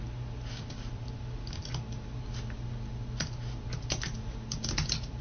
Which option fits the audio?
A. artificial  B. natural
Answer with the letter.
B